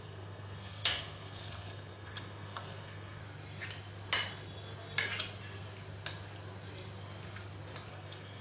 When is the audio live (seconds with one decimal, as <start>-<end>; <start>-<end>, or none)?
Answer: 3.2-7.9